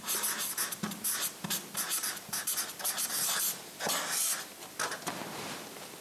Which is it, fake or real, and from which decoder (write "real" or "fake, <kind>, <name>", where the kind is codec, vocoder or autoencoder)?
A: fake, vocoder, BigVGAN v2